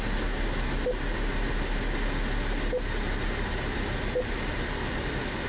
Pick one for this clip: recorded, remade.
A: recorded